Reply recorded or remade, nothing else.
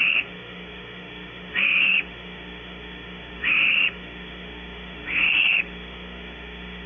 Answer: remade